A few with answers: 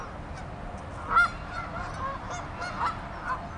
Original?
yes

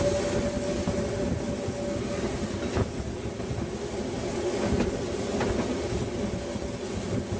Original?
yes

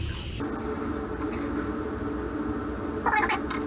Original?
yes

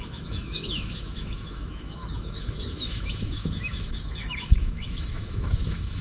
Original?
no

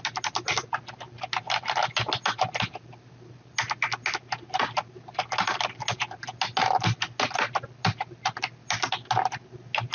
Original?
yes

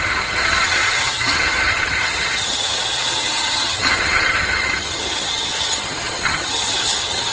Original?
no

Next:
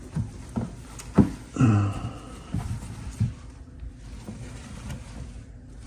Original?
yes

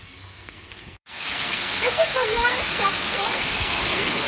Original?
no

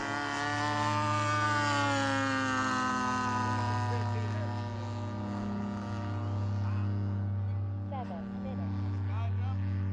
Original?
yes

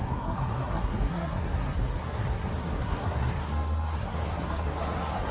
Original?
no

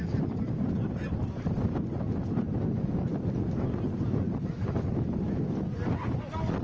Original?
yes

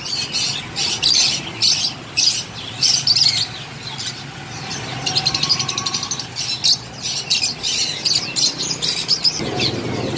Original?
yes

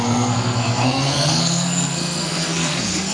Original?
no